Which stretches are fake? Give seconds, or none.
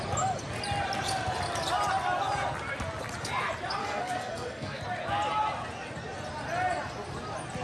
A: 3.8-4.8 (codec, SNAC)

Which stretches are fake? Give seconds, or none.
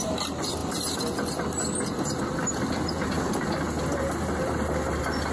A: none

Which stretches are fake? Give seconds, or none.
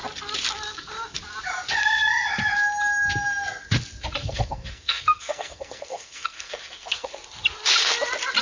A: 4.2-7.1 (codec, SNAC)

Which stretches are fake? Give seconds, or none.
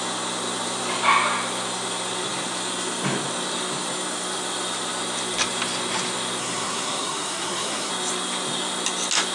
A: 6.4-7.9 (codec, SNAC)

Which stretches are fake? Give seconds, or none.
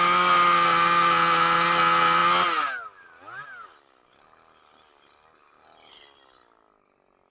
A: none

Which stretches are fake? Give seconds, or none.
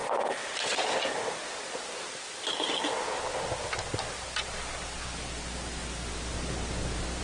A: none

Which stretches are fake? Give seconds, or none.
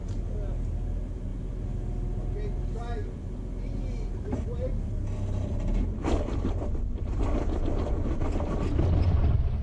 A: none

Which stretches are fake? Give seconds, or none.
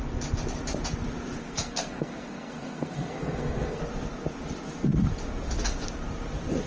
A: 1.4-3.8 (codec, SNAC)